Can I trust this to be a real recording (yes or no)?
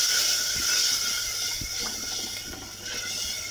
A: yes